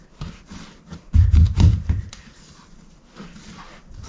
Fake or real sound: fake